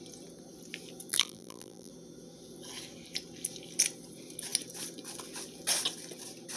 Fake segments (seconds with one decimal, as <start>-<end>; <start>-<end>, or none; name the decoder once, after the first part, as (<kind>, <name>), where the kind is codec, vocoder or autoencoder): 1.1-1.9 (vocoder, BigVGAN v2)